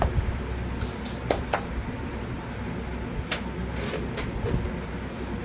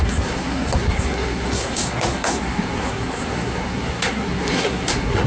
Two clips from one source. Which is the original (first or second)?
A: first